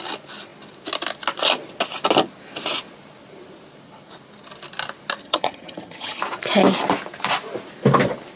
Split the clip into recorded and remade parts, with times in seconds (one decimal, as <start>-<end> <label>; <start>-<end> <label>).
0.0-5.2 recorded; 5.2-6.2 remade; 6.2-8.4 recorded

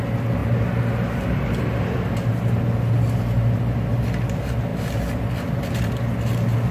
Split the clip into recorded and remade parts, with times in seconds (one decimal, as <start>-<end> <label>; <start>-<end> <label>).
0.0-0.4 recorded; 0.4-3.6 remade; 3.6-6.7 recorded

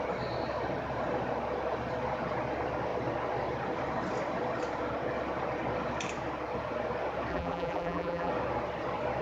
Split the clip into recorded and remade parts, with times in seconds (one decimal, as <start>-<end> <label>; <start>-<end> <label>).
0.0-7.3 recorded; 7.3-8.3 remade; 8.3-9.2 recorded

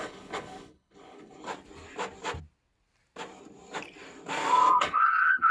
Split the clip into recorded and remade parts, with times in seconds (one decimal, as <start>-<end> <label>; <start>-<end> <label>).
0.0-1.5 remade; 1.5-4.8 recorded; 4.8-5.5 remade

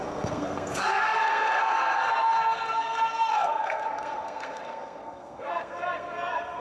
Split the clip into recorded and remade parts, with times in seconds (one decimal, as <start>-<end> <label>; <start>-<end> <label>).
0.0-6.6 remade

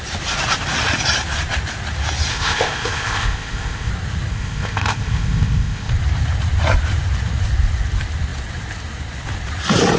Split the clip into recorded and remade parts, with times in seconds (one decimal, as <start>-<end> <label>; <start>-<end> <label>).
0.0-2.3 recorded; 2.3-3.9 remade; 3.9-4.3 recorded; 4.3-5.9 remade; 5.9-10.0 recorded